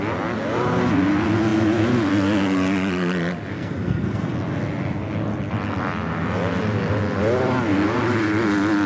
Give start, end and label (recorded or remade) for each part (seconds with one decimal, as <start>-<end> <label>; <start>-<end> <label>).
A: 0.0-3.5 recorded; 3.5-4.3 remade; 4.3-8.9 recorded